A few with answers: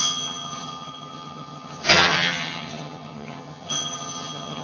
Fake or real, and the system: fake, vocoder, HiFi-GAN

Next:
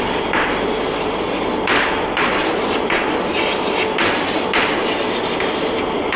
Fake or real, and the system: fake, vocoder, BigVGAN v2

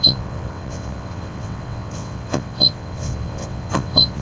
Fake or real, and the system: fake, vocoder, WaveNeXt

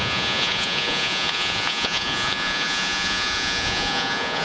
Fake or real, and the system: fake, vocoder, Vocos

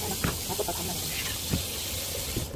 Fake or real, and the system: real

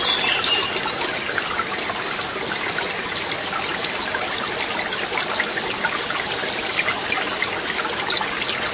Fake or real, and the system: real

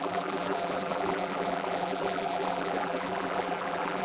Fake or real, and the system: fake, vocoder, BigVGAN v2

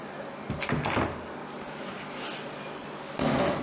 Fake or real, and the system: real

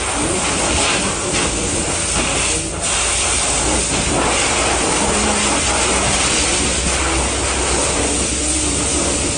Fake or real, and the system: real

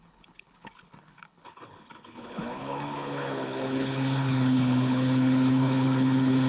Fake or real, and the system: fake, codec, HILCodec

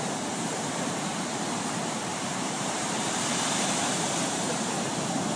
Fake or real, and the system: fake, vocoder, BigVGAN v2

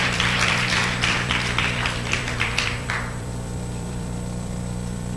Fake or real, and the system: fake, vocoder, BigVGAN v2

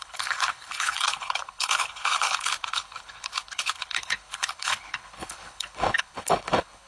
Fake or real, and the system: fake, codec, HILCodec